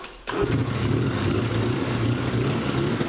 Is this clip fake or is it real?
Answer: fake